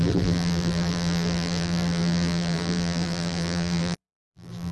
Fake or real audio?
fake